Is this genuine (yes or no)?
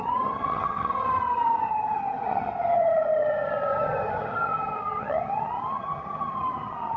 no